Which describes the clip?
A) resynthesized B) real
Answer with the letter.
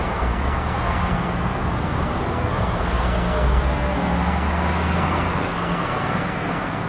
A